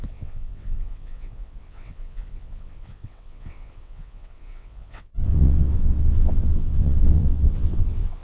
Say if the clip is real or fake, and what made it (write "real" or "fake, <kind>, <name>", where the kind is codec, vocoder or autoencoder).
fake, vocoder, WaveNeXt